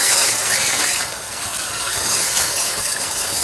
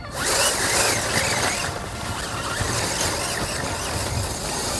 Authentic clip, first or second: second